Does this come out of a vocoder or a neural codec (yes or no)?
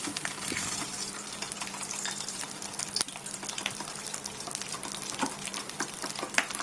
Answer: yes